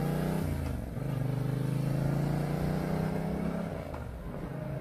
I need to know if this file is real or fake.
real